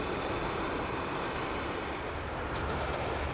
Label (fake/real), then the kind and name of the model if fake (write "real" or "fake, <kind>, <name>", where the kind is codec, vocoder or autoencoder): fake, vocoder, BigVGAN v2